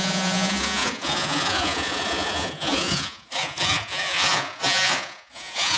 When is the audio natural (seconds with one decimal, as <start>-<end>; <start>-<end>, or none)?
none